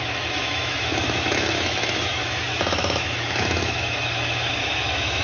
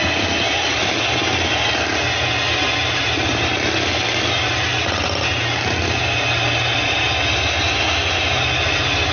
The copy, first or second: first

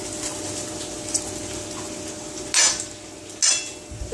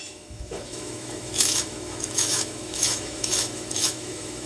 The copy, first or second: second